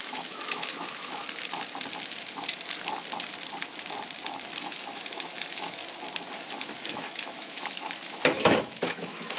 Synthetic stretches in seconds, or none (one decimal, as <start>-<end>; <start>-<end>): 0.0-1.2; 4.6-5.8; 6.5-9.4